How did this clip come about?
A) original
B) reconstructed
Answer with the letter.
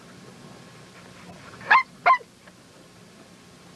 A